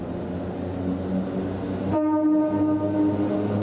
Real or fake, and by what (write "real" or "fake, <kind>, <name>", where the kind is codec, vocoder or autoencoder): real